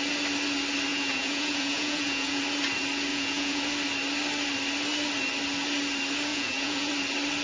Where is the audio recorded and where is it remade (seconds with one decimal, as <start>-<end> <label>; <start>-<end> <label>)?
0.0-0.9 recorded; 0.9-2.4 remade; 2.4-3.1 recorded; 3.1-3.6 remade; 3.6-6.3 recorded; 6.3-6.9 remade; 6.9-7.4 recorded